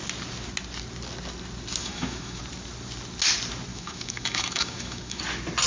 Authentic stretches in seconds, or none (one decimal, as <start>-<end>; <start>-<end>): 0.0-1.8; 2.4-3.7; 5.2-5.7